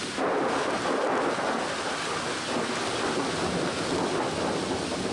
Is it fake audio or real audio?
real